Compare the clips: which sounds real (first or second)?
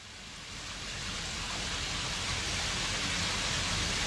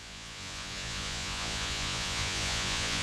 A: first